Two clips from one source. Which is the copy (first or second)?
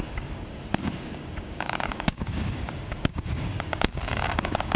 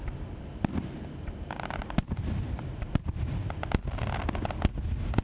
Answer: first